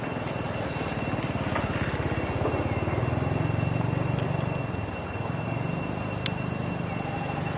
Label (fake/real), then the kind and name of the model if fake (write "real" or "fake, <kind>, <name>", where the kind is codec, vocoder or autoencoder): real